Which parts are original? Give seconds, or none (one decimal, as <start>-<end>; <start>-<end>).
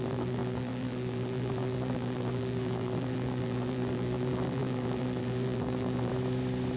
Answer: 6.1-6.8